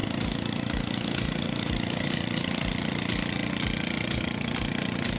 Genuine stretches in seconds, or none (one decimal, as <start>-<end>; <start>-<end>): 2.1-5.2